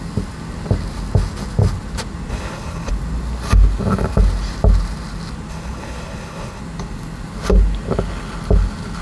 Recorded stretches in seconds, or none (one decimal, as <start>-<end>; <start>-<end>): 0.0-2.3; 2.9-5.5; 6.6-9.0